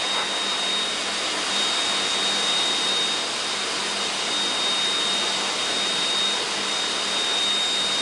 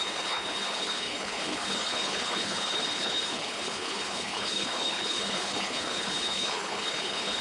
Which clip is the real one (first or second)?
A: first